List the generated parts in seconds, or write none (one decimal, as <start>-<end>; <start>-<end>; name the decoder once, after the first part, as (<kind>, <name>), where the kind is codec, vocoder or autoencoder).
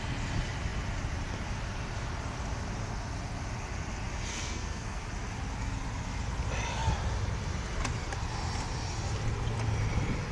4.3-5.0 (codec, SNAC)